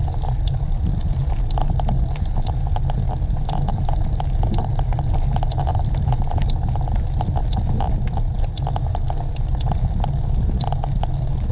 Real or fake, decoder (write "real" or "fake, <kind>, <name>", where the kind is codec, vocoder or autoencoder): real